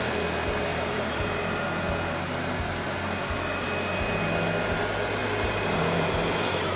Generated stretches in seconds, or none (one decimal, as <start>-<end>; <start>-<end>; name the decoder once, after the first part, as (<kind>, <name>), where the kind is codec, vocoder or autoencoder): 0.7-1.4 (vocoder, BigVGAN v2); 5.2-6.8

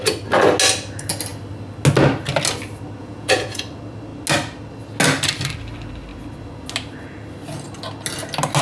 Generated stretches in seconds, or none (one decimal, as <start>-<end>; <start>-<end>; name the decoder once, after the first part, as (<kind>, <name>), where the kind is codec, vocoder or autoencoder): 3.0-3.6 (vocoder, Vocos)

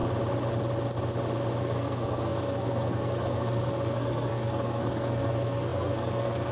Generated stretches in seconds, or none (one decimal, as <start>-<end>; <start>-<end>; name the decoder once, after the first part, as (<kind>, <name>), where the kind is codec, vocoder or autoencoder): 1.6-6.5 (codec, SNAC)

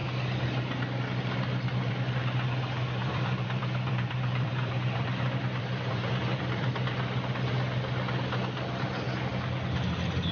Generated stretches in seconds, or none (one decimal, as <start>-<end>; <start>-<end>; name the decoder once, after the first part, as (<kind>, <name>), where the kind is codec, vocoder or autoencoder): 3.0-6.7 (vocoder, BigVGAN v2)